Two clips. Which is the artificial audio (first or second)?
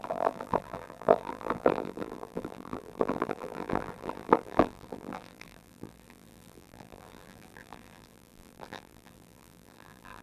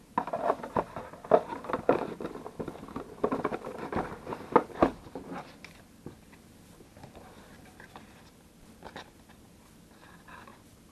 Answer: first